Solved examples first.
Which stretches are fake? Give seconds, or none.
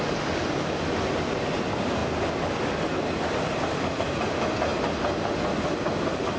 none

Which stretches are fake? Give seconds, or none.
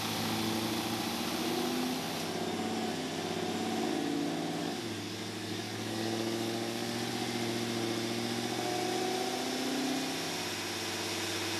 4.6-7.1 (codec, DAC)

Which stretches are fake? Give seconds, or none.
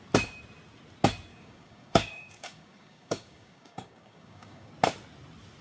1.3-4.7 (codec, DAC)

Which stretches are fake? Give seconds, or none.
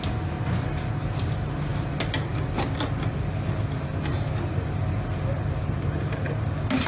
none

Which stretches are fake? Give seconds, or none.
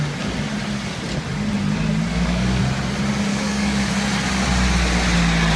2.1-2.6 (codec, DAC); 3.3-3.9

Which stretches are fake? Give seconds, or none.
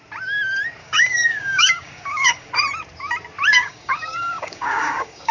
0.8-2.5 (codec, DAC); 3.5-5.3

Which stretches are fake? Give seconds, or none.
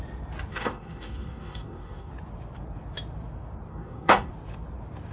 0.5-2.1 (codec, DAC); 3.7-4.3